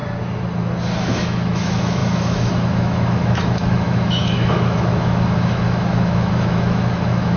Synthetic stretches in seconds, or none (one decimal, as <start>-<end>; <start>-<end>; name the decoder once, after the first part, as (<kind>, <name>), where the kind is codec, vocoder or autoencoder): 1.1-7.4 (autoencoder, DAC-VAE)